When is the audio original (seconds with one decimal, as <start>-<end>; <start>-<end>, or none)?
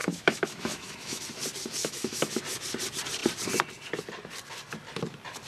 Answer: 1.2-1.8; 2.4-5.5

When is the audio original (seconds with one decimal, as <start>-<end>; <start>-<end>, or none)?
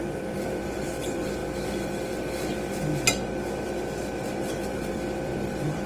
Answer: 1.4-4.9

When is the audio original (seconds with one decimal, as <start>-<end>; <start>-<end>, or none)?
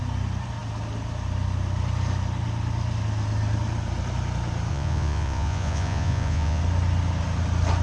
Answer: 0.0-4.7; 6.6-7.8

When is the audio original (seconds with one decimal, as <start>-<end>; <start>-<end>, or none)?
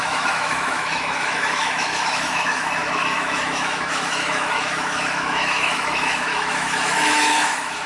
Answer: none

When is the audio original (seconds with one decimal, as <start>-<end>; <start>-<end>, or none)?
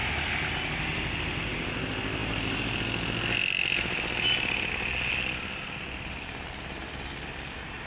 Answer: 0.0-7.9